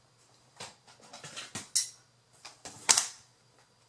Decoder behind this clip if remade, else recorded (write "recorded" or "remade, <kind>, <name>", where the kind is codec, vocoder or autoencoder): recorded